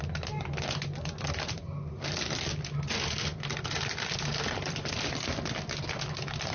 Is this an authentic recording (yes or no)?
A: yes